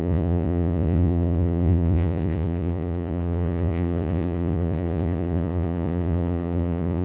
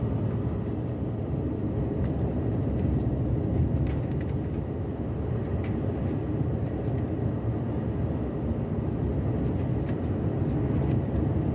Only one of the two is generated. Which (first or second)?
first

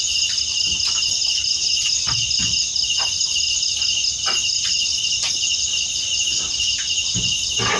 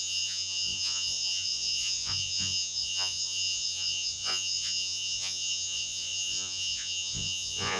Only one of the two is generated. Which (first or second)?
second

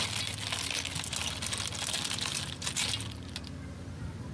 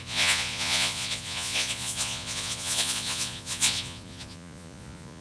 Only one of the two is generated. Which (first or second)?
second